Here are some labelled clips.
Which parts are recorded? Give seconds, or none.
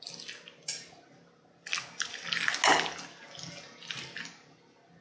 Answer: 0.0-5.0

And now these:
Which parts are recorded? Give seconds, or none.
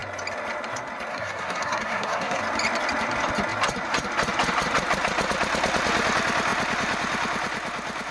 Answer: 0.0-1.1; 2.4-8.1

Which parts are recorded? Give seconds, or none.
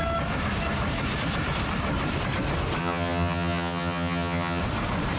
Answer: 0.0-2.8; 4.6-5.2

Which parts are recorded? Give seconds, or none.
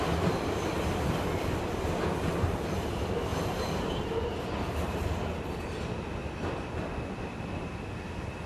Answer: 0.0-3.3; 4.4-8.5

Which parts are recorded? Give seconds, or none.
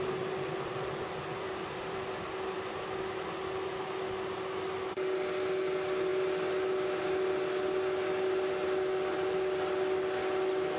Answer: 0.0-10.8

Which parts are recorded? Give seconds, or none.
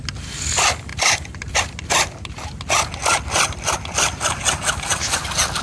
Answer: 0.0-5.6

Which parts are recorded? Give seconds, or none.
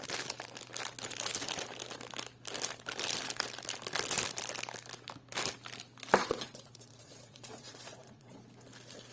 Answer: 0.0-6.2; 8.4-9.1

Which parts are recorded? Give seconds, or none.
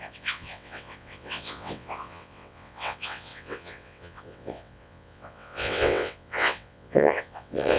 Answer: none